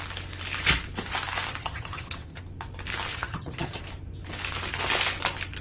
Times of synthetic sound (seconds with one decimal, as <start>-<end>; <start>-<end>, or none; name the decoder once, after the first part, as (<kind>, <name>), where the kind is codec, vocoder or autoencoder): 1.6-2.4 (vocoder, HiFi-GAN); 3.1-3.8